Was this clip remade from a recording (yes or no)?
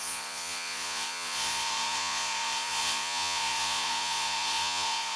yes